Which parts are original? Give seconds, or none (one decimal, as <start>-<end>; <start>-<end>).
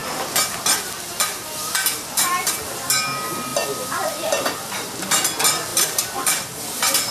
0.0-3.5; 5.1-5.7; 6.6-7.1